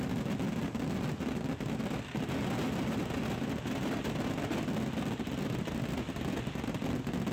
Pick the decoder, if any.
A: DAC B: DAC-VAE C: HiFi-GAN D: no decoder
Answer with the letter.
D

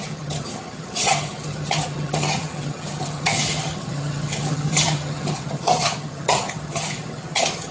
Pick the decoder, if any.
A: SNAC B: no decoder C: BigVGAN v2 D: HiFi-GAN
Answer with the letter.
D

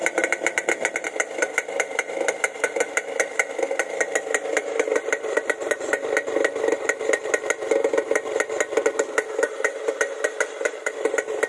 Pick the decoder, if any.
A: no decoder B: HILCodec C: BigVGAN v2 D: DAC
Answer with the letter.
C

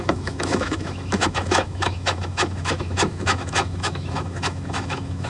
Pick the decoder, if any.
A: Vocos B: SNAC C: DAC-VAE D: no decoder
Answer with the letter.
C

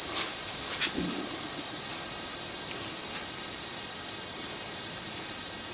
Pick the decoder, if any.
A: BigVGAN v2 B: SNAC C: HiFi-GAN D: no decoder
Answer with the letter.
D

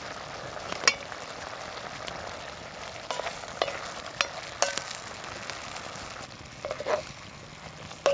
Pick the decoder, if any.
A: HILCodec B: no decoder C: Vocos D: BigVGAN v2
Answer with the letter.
B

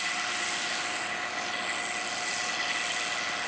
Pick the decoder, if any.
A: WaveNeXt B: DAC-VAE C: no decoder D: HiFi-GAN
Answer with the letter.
C